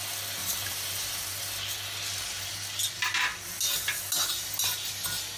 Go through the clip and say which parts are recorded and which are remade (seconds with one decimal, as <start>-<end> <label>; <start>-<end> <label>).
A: 0.0-0.4 recorded; 0.4-1.4 remade; 1.4-5.4 recorded